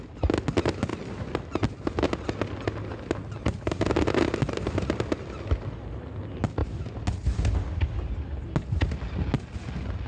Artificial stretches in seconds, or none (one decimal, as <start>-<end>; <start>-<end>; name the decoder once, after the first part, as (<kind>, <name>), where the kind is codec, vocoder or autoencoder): none